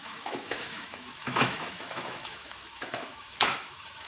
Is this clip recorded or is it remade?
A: remade